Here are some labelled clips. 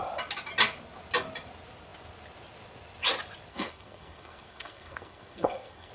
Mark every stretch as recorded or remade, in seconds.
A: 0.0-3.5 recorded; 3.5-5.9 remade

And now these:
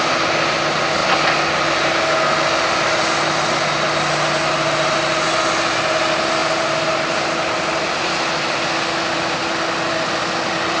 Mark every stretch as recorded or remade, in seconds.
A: 0.0-10.8 recorded

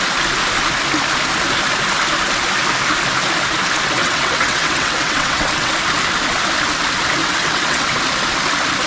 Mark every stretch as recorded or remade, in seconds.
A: 0.0-4.0 recorded; 4.0-5.7 remade; 5.7-7.2 recorded; 7.2-8.0 remade; 8.0-8.9 recorded

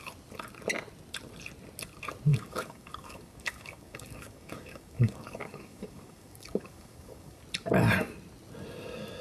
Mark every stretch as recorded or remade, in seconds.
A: 0.0-2.3 recorded; 2.3-7.4 remade; 7.4-9.2 recorded